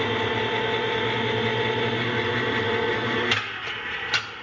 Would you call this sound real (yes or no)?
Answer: yes